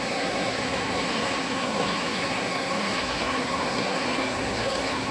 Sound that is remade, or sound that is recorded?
remade